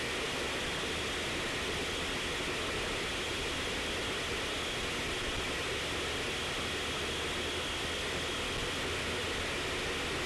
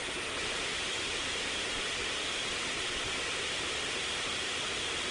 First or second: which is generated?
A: second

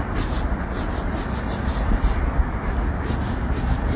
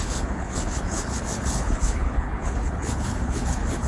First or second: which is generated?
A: second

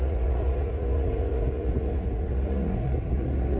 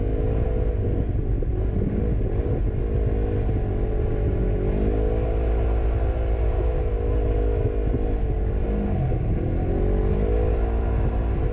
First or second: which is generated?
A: first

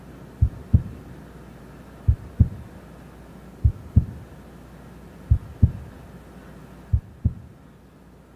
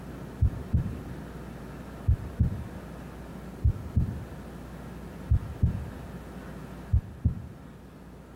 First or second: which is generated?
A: second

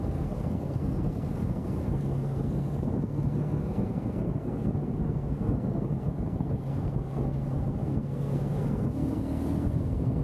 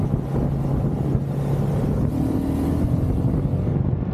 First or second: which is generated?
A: first